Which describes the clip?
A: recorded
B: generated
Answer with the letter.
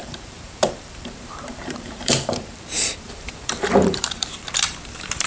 B